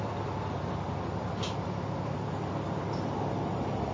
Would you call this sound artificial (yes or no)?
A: no